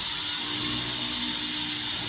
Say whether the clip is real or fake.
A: real